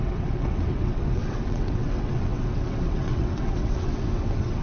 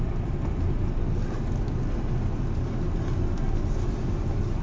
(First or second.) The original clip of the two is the second